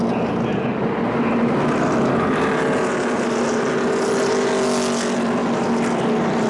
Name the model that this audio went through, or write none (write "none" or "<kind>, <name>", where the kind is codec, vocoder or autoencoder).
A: none